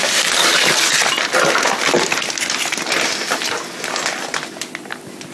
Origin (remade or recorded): recorded